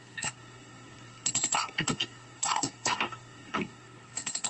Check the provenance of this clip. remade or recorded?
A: remade